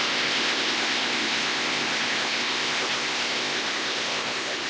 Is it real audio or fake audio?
fake